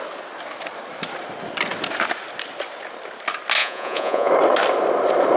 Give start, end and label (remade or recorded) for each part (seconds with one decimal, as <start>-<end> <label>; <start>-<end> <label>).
0.0-3.6 recorded; 3.6-4.3 remade; 4.3-5.4 recorded